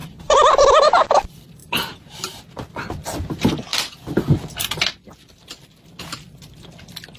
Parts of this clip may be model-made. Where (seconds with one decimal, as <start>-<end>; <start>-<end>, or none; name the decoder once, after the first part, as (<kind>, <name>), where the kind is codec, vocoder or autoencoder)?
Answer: 0.0-0.6 (vocoder, BigVGAN v2); 1.6-2.4